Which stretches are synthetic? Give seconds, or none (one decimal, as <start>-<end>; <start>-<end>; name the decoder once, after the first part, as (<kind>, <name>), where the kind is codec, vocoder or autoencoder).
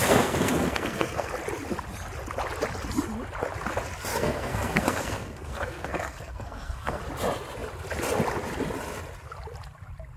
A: 0.0-1.3 (codec, SNAC); 4.1-7.0